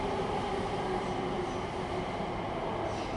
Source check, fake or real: real